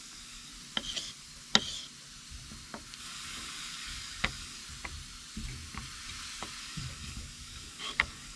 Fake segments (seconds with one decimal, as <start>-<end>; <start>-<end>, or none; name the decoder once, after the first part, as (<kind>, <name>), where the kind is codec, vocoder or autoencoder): 0.0-0.5 (codec, DAC); 3.0-4.6; 6.6-8.4